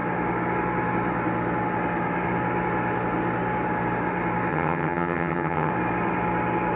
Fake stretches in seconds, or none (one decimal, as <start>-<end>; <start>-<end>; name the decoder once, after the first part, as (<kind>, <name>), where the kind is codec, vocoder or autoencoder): 4.5-5.7 (vocoder, HiFi-GAN)